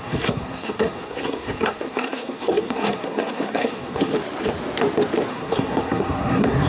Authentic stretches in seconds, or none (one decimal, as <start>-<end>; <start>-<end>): 4.1-5.3